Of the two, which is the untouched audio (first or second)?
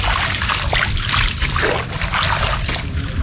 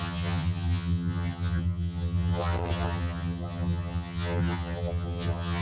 first